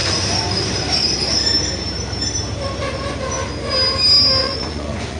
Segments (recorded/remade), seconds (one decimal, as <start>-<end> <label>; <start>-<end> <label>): 0.0-4.4 recorded; 4.4-5.2 remade